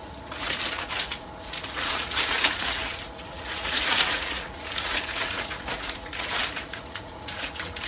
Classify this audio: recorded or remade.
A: remade